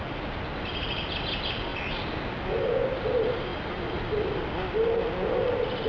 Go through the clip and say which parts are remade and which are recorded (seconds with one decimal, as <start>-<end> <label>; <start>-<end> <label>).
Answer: 0.0-5.9 recorded

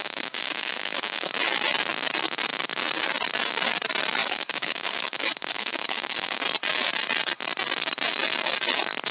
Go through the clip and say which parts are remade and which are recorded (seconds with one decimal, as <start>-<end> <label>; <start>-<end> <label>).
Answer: 0.0-1.3 remade; 1.3-4.2 recorded; 4.2-6.4 remade; 6.4-9.1 recorded